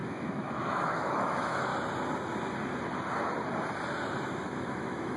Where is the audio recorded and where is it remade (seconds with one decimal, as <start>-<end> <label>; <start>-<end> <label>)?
0.0-1.7 remade; 1.7-4.3 recorded; 4.3-5.2 remade